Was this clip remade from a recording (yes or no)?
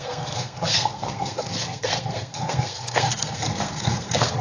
yes